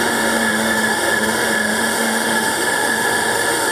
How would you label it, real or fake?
fake